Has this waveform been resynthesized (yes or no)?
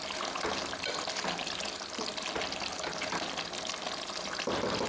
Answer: no